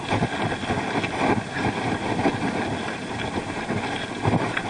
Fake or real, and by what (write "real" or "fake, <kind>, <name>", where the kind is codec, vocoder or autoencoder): real